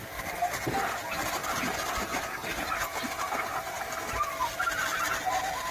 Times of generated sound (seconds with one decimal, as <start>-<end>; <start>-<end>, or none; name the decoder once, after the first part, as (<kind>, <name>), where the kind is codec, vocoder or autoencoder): 1.4-4.4 (vocoder, BigVGAN v2)